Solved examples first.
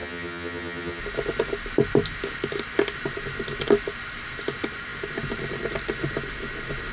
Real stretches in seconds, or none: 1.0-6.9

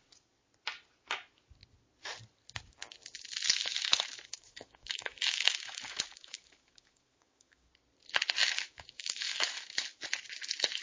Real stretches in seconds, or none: 0.0-3.5; 7.7-8.4; 10.0-10.8

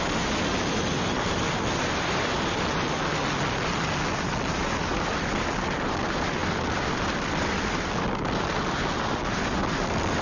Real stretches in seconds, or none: 0.0-10.2

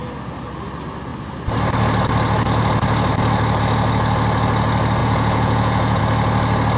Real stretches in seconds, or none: 0.0-5.0; 6.0-6.8

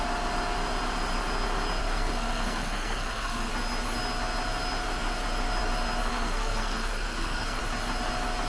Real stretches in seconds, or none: 0.0-1.8; 3.5-6.1; 7.6-8.5